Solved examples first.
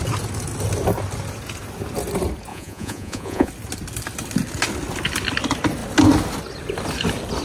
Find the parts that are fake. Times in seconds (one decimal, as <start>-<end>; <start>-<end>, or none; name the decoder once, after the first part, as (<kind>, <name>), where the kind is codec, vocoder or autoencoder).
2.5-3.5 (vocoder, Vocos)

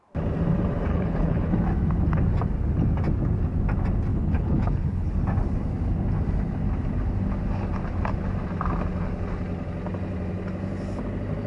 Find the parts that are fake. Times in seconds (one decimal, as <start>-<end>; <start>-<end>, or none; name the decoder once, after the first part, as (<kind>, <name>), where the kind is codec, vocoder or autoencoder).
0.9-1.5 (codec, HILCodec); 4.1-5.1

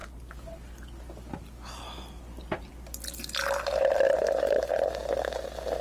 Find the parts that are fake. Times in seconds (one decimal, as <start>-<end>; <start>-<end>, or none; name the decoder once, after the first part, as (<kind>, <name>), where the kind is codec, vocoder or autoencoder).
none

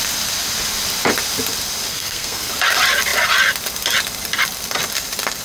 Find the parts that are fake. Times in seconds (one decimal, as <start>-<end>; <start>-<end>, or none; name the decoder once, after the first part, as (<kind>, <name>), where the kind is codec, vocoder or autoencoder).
1.9-2.5 (codec, SNAC)